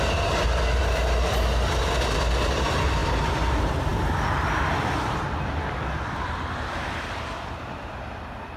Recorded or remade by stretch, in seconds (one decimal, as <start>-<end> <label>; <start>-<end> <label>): 0.0-3.0 recorded; 3.0-3.5 remade; 3.5-8.6 recorded